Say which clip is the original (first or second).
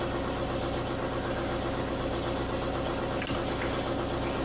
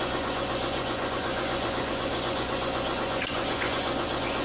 first